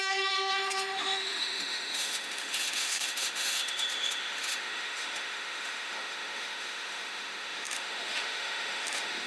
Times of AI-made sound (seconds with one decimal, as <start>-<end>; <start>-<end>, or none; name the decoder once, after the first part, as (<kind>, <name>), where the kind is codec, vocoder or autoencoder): 0.0-9.3 (autoencoder, DAC-VAE)